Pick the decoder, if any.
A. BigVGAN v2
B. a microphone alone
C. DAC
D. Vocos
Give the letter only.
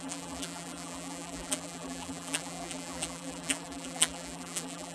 A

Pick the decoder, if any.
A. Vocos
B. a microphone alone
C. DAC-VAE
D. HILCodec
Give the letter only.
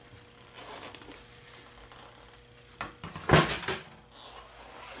B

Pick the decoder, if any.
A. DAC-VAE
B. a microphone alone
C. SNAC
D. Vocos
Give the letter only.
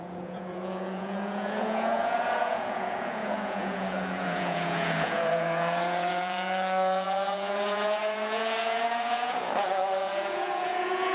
D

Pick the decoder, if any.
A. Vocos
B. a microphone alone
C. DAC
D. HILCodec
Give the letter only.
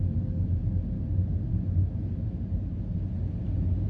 B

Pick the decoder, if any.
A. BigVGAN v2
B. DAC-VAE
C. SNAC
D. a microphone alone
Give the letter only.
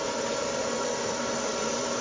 D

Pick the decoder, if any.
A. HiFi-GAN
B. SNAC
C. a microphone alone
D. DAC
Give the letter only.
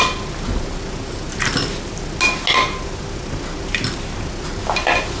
C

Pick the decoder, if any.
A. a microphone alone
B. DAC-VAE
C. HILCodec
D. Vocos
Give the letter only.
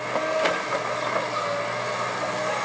A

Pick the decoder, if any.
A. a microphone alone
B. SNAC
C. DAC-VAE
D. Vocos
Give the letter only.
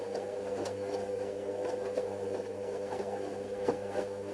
B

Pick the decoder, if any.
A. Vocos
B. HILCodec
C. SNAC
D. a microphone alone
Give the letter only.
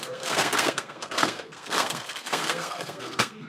C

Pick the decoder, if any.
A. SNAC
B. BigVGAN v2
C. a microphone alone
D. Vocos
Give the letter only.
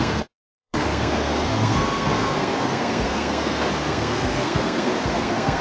A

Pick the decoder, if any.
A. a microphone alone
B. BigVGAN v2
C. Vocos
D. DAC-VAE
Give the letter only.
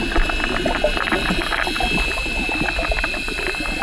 A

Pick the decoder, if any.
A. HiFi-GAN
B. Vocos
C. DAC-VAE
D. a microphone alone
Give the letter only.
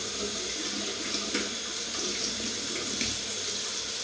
D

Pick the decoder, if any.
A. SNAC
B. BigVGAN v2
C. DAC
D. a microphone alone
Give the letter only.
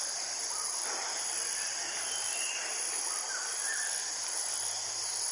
D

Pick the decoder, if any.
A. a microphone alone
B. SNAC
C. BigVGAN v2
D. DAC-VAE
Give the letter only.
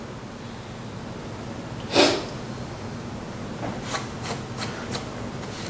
A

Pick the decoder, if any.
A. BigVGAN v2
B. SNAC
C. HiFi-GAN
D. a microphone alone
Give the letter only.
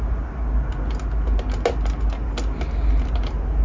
D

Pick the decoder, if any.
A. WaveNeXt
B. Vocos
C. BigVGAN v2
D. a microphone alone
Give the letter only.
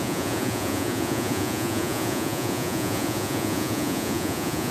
B